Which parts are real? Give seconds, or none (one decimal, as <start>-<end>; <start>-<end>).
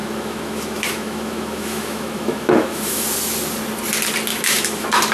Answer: 3.0-4.3